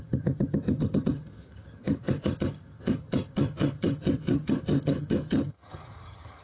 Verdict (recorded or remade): remade